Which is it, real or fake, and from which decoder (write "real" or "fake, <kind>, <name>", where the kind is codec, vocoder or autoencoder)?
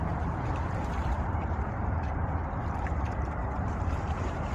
fake, vocoder, BigVGAN v2